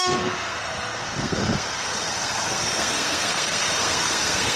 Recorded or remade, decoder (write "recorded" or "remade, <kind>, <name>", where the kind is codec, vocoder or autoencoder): remade, codec, SNAC